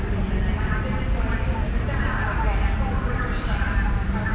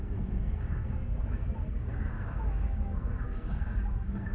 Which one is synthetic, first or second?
second